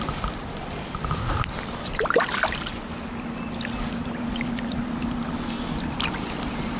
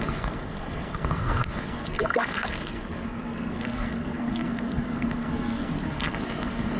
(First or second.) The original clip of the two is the first